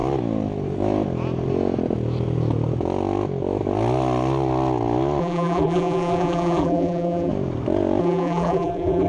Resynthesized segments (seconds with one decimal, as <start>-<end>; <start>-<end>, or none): 5.2-7.3; 8.0-9.1